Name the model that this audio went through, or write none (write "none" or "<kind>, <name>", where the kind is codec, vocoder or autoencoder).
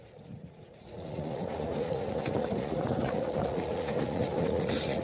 vocoder, Vocos